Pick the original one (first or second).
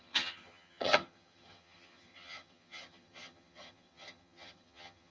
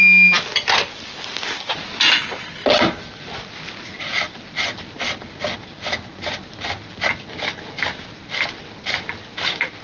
second